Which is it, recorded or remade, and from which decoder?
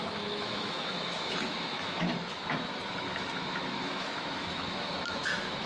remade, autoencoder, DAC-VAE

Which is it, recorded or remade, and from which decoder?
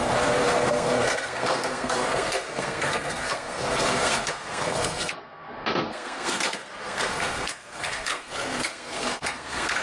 remade, codec, SNAC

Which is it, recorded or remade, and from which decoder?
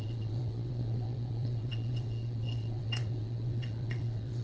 remade, vocoder, WaveNeXt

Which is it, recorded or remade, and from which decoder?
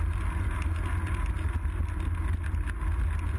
recorded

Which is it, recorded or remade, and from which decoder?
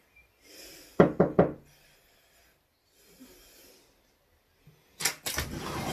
recorded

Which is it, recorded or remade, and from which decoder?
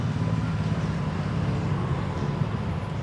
recorded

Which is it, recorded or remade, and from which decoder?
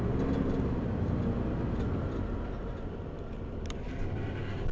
recorded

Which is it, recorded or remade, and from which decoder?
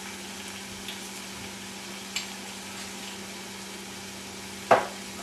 recorded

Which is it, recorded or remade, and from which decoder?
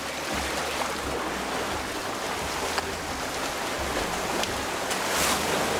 recorded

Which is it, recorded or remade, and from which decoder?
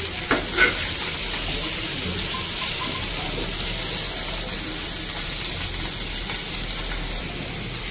recorded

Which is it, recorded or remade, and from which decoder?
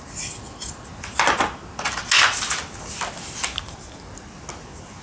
recorded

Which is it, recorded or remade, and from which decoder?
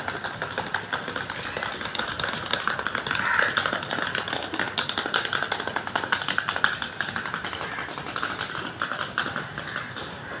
recorded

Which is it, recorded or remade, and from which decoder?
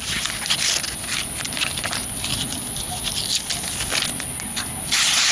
recorded